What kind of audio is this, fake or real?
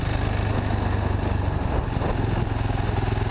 real